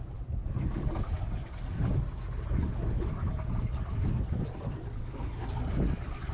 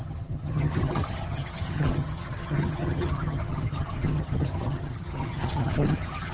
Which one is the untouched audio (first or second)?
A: first